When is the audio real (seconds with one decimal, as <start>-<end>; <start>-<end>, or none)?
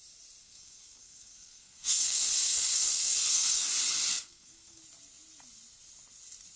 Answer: 0.0-0.4; 3.6-4.1; 4.8-6.6